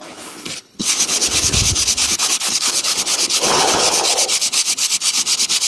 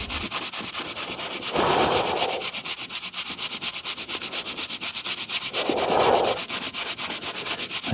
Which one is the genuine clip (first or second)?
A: second